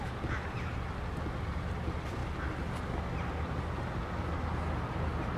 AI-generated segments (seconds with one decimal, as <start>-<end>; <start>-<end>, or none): none